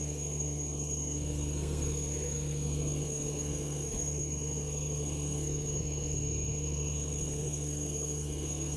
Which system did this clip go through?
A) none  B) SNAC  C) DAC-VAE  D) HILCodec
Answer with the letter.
B